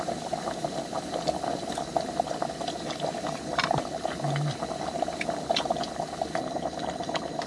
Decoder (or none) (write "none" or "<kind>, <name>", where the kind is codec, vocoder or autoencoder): none